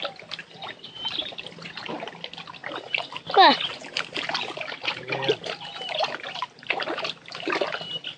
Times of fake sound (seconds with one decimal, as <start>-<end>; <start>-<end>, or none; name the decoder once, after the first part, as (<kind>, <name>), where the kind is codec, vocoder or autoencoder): none